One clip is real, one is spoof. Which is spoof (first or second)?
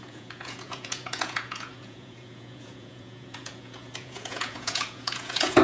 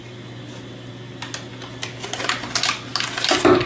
first